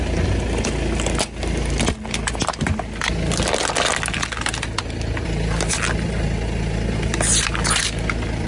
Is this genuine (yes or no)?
yes